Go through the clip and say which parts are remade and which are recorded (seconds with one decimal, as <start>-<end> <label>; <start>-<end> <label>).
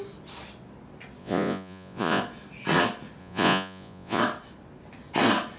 0.0-1.2 recorded; 1.2-2.2 remade; 2.2-3.2 recorded; 3.2-4.2 remade; 4.2-5.6 recorded